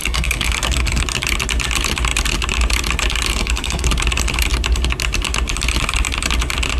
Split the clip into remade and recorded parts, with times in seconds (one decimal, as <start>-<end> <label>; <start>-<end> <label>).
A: 0.0-1.0 remade; 1.0-3.3 recorded; 3.3-3.9 remade; 3.9-6.8 recorded